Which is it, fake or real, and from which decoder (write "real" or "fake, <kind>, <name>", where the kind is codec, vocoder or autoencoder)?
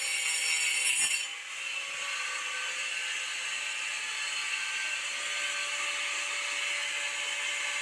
real